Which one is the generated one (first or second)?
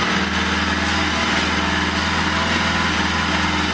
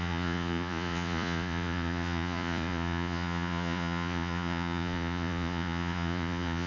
second